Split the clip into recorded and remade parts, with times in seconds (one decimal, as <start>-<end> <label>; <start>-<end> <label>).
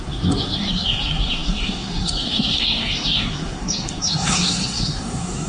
0.0-5.5 remade